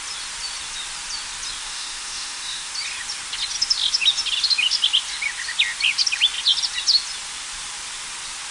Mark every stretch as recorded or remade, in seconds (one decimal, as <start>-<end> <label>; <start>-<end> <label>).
0.0-1.6 recorded; 1.6-2.7 remade; 2.7-8.5 recorded